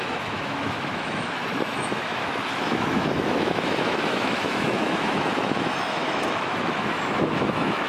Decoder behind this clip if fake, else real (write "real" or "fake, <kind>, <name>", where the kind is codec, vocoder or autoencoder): fake, autoencoder, DAC-VAE